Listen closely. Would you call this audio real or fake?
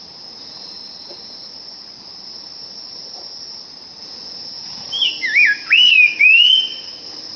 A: fake